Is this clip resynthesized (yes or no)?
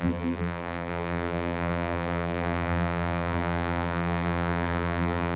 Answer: yes